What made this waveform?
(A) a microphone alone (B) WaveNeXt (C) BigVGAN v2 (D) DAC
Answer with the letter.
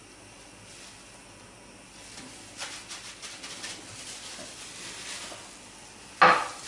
A